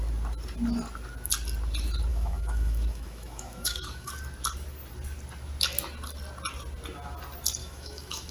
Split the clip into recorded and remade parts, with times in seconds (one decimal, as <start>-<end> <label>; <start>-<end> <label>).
0.0-2.1 recorded; 2.1-4.1 remade; 4.1-7.6 recorded; 7.6-8.3 remade